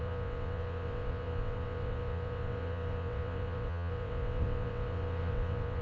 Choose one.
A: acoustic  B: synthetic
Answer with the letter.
B